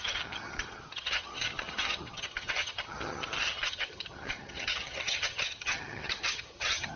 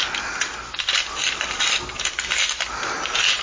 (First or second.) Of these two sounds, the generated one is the first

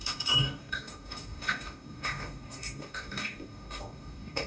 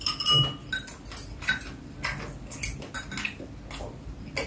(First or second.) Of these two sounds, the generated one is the first